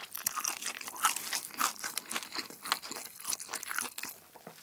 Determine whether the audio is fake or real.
real